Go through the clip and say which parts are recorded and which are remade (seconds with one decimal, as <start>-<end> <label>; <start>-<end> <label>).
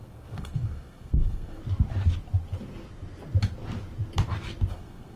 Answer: 0.0-1.6 remade; 1.6-4.7 recorded; 4.7-5.2 remade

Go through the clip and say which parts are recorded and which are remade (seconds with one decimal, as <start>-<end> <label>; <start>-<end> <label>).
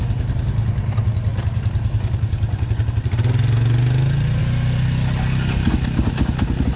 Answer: 0.0-6.8 recorded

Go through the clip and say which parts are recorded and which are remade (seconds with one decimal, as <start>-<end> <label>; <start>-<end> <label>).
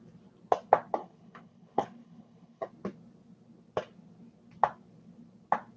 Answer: 0.0-1.0 recorded; 1.0-2.7 remade; 2.7-5.8 recorded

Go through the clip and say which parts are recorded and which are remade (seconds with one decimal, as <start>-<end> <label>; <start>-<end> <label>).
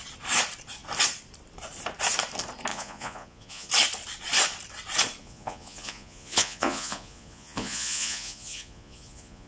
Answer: 0.0-2.7 recorded; 2.7-3.7 remade; 3.7-5.2 recorded; 5.2-9.5 remade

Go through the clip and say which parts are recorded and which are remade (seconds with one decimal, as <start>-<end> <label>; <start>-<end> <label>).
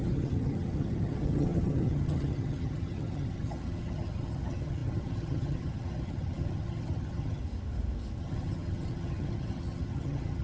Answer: 0.0-7.4 remade; 7.4-8.2 recorded; 8.2-10.4 remade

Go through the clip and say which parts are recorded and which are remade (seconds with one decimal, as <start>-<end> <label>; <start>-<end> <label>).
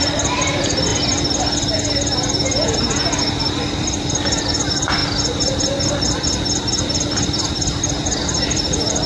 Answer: 0.0-0.9 remade; 0.9-3.4 recorded; 3.4-5.0 remade; 5.0-5.6 recorded; 5.6-9.1 remade